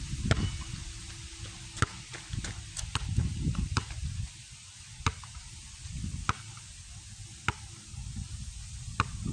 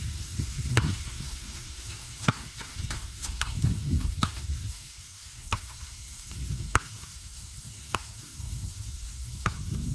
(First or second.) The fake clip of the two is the second